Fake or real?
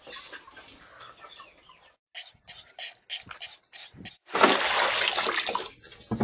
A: real